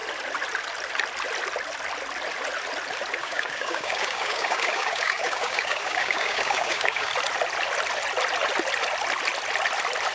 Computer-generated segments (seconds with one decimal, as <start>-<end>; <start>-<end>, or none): 3.2-7.1